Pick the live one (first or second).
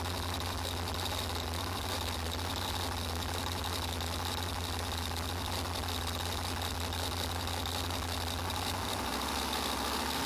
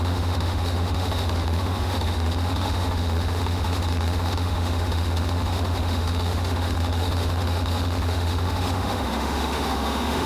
first